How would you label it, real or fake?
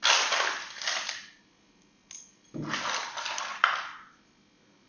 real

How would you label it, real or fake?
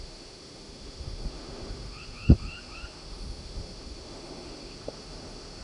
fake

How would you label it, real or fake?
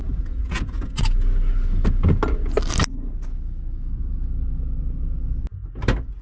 real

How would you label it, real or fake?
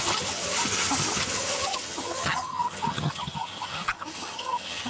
fake